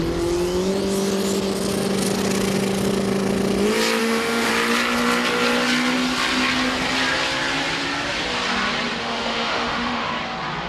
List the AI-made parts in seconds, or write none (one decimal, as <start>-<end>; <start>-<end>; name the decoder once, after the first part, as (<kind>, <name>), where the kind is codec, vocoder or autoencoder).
4.0-4.5 (autoencoder, DAC-VAE); 9.0-10.1